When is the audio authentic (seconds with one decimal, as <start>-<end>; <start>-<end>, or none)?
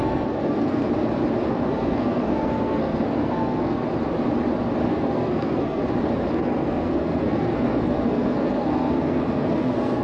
0.8-1.5; 3.8-4.9; 5.8-6.3